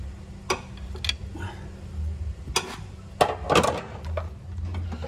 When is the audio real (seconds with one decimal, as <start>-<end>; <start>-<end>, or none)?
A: 0.0-5.1